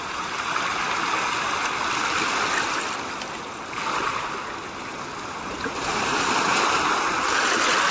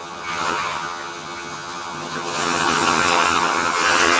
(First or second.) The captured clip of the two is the first